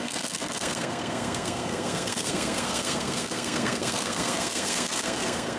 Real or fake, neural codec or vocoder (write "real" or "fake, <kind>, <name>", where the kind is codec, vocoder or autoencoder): fake, codec, SNAC